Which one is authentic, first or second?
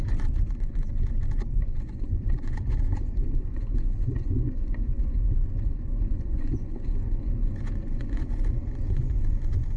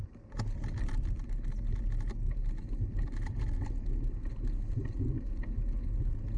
second